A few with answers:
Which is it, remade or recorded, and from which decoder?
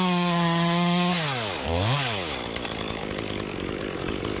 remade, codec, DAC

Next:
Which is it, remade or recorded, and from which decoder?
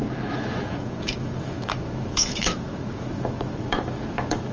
remade, autoencoder, DAC-VAE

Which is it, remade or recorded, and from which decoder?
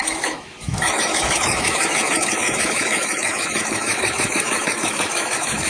remade, autoencoder, DAC-VAE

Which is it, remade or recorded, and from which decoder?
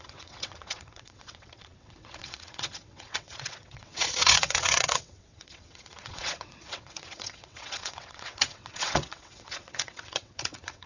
remade, vocoder, WaveNeXt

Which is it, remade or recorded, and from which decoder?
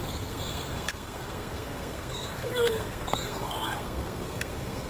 remade, codec, SNAC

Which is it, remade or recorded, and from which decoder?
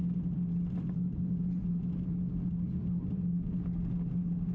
recorded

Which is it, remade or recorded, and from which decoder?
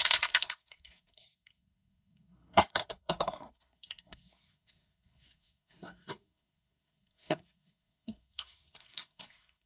remade, codec, SNAC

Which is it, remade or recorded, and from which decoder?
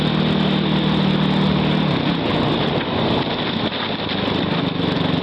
recorded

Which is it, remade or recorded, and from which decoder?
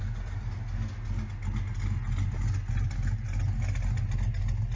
recorded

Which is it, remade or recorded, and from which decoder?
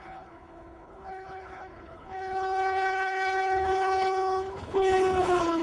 remade, codec, HILCodec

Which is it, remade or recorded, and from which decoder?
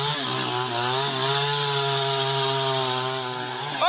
recorded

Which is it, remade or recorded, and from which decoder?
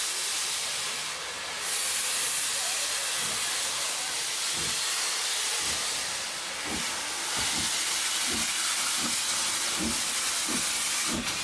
recorded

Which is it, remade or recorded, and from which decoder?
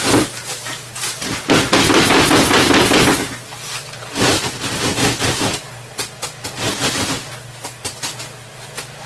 recorded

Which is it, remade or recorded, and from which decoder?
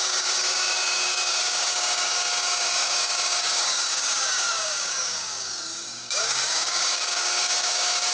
remade, codec, DAC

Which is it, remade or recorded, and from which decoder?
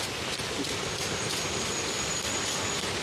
recorded